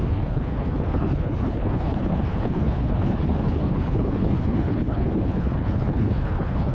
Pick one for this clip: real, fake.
fake